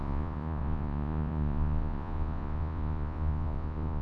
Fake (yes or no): yes